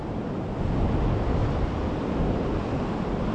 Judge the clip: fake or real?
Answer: real